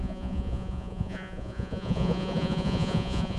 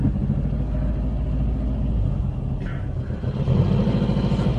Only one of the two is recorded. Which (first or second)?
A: second